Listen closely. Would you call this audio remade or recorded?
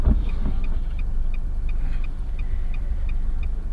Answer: recorded